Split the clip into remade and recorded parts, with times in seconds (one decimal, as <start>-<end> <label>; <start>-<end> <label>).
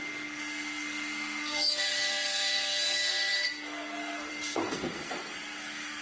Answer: 0.0-6.0 remade